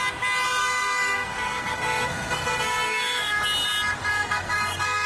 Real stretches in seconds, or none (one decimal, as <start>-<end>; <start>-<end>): 0.0-0.6; 3.4-4.1